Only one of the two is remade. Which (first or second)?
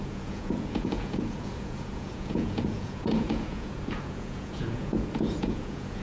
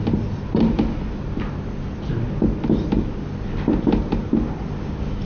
first